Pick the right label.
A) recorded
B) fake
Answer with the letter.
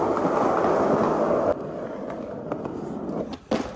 A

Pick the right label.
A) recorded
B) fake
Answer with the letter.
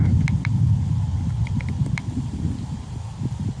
B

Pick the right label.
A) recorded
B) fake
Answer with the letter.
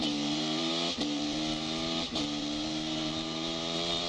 B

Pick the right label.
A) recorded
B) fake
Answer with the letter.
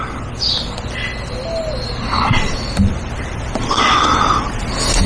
A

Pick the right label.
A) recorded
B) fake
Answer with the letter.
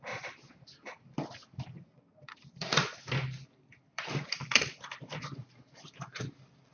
B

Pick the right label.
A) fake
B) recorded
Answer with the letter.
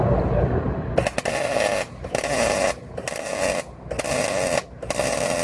B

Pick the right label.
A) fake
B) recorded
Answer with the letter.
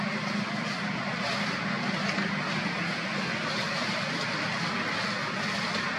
B